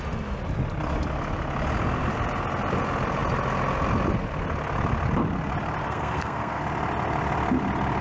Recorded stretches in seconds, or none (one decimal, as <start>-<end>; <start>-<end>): 0.0-5.8; 6.6-8.0